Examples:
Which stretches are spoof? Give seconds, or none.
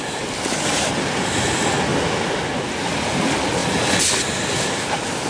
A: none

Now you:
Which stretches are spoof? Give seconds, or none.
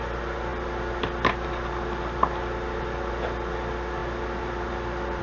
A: none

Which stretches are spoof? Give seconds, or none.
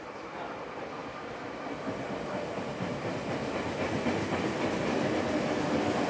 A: none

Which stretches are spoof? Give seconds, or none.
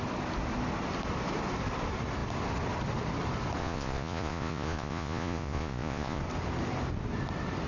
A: 3.6-6.2 (vocoder, Vocos)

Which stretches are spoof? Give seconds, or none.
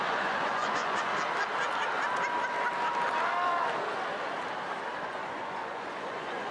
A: 0.0-1.1 (vocoder, Vocos); 5.0-6.5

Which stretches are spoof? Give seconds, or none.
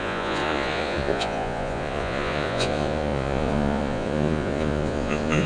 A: 0.0-5.5 (vocoder, Vocos)